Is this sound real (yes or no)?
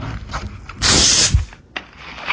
yes